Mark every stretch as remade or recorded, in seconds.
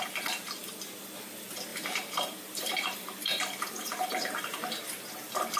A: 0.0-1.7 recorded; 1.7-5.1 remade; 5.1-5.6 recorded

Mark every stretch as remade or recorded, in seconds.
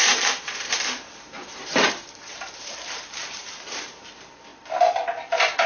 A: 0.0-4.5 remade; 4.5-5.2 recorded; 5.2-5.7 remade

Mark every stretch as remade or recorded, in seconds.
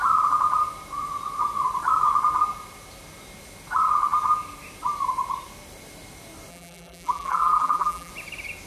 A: 0.0-6.5 recorded; 6.5-8.1 remade; 8.1-8.7 recorded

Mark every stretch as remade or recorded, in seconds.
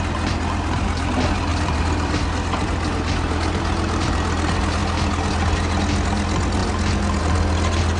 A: 0.0-1.5 recorded; 1.5-2.1 remade; 2.1-8.0 recorded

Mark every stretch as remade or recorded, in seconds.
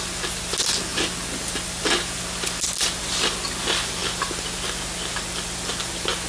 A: 0.0-6.3 recorded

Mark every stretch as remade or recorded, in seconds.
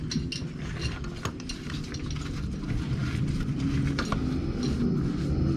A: 0.0-5.6 recorded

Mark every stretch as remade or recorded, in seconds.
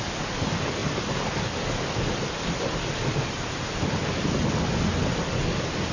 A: 0.0-5.9 recorded